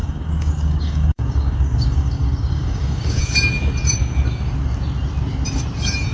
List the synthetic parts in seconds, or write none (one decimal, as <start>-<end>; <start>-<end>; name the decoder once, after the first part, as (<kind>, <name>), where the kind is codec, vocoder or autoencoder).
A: 0.0-3.2 (codec, DAC)